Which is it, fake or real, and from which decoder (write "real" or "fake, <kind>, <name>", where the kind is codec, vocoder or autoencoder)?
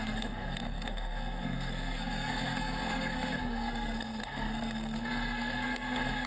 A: fake, codec, SNAC